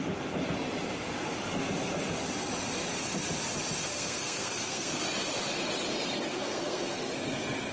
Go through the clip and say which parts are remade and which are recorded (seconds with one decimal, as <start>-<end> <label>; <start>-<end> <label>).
0.0-3.9 recorded; 3.9-5.0 remade; 5.0-6.3 recorded; 6.3-7.0 remade; 7.0-7.7 recorded